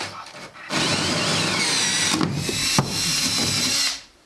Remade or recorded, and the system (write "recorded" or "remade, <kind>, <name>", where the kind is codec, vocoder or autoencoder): remade, vocoder, BigVGAN v2